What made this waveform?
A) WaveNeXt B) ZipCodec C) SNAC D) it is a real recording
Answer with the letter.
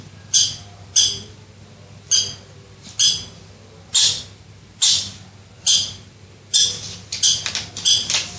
D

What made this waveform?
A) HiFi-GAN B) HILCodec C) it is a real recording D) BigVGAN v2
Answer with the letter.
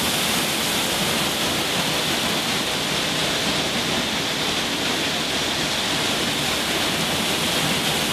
C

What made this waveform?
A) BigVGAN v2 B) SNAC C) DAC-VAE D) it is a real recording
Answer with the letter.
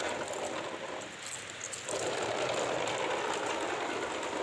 D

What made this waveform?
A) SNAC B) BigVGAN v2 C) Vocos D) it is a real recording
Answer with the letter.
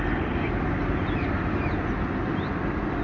D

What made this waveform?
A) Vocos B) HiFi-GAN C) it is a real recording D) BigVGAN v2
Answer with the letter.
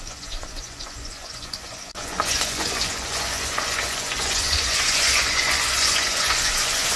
A